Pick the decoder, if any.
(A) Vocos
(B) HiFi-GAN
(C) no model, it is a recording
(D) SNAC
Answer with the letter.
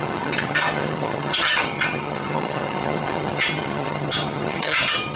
B